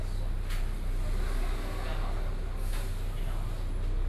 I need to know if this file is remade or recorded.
recorded